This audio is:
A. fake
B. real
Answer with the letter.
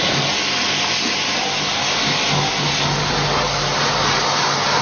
B